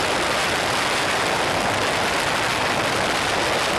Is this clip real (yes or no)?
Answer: yes